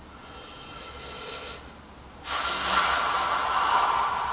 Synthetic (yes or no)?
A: no